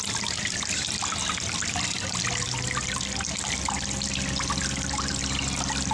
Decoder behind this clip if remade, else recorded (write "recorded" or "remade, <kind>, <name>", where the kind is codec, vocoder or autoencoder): recorded